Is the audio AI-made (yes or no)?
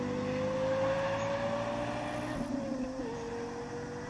no